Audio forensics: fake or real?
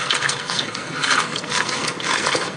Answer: fake